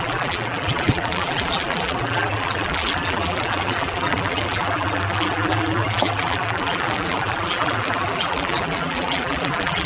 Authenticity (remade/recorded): remade